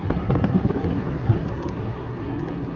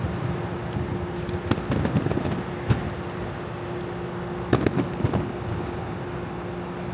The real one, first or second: second